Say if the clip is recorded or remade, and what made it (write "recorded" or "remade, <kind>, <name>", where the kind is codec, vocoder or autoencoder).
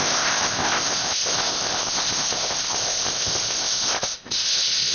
remade, codec, ZipCodec